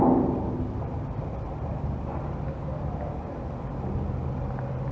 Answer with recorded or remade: recorded